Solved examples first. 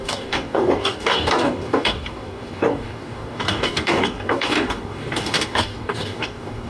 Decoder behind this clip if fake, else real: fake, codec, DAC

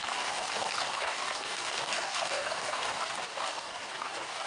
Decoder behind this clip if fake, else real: fake, codec, DAC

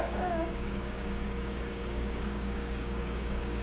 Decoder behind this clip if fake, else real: fake, codec, DAC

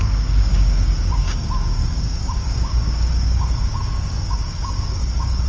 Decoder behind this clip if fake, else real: fake, codec, DAC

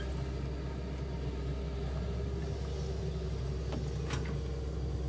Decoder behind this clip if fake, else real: real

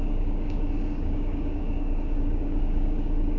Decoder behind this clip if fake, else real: fake, codec, DAC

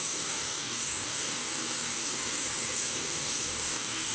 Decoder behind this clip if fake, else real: fake, codec, DAC